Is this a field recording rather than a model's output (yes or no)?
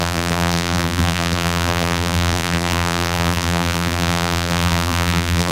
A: no